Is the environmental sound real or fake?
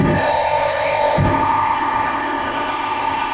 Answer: fake